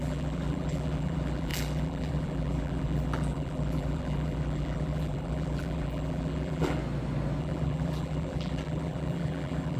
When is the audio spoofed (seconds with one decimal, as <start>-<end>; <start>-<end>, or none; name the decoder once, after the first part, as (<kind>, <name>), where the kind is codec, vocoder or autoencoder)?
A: 0.0-6.8 (vocoder, BigVGAN v2); 7.4-9.8